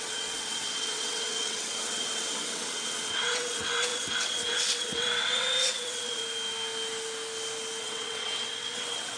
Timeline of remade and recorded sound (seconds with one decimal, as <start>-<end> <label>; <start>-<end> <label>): 0.0-6.2 remade; 6.2-7.8 recorded; 7.8-9.2 remade